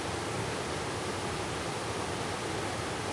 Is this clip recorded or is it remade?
recorded